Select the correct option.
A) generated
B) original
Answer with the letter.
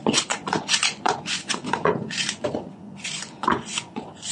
A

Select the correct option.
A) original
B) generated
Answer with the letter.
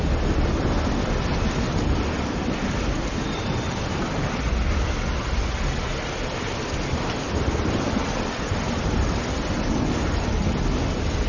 A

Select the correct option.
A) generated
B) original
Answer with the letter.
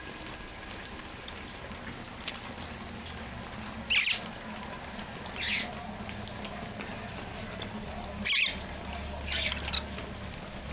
B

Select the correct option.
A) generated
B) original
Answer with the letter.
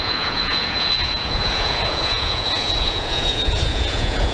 A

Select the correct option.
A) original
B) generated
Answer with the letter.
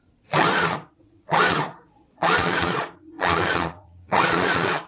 B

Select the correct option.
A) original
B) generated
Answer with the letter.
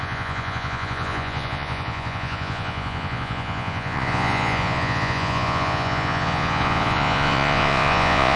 B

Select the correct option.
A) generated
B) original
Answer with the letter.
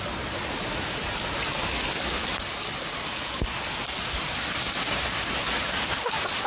B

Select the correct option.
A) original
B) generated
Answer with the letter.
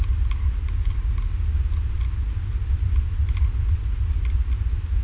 A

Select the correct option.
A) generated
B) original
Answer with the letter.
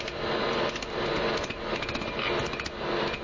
B